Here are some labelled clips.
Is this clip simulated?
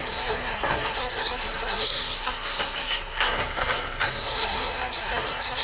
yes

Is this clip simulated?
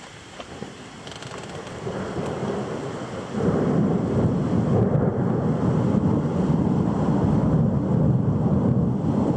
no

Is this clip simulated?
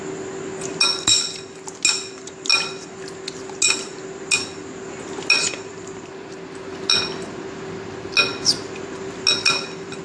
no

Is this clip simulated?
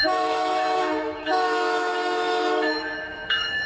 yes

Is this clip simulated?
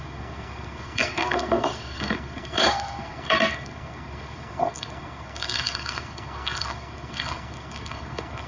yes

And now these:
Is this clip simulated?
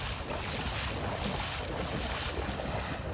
no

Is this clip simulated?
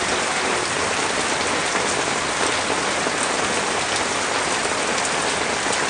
no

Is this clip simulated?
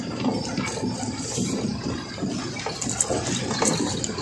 no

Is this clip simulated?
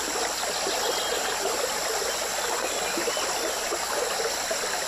no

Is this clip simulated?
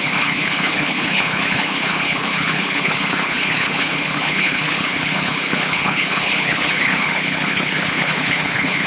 yes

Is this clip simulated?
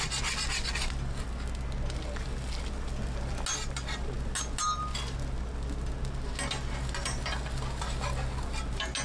no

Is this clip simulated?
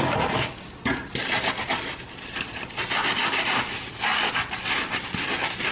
no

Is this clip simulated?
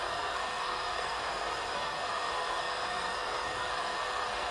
yes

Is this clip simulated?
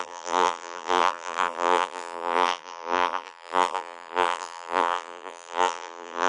yes